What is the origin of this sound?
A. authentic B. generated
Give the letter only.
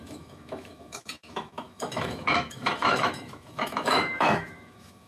B